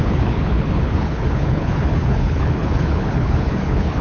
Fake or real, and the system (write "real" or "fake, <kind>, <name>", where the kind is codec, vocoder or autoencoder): fake, codec, HILCodec